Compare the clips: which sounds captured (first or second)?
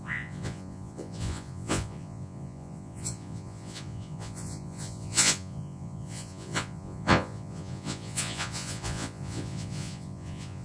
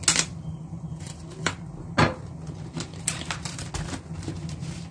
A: second